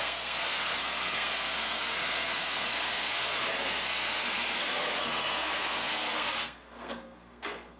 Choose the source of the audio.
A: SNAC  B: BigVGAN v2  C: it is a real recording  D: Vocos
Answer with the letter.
A